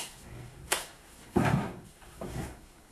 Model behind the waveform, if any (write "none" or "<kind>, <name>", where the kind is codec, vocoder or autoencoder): codec, SNAC